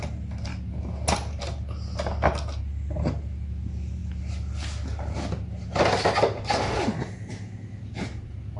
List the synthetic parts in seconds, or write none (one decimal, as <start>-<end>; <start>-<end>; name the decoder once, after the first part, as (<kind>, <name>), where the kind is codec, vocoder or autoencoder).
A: none